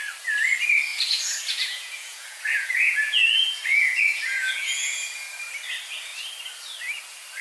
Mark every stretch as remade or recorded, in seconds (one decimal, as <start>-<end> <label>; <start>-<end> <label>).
0.0-0.9 recorded; 0.9-5.3 remade; 5.3-7.4 recorded